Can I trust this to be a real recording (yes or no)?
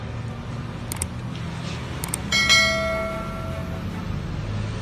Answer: yes